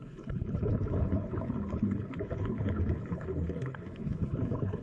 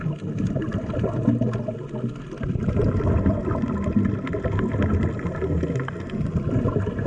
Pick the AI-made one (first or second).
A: first